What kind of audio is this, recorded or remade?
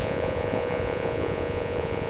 remade